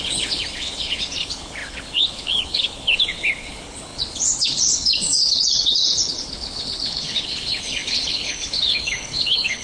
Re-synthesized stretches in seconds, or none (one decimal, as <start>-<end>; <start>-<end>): 0.0-9.6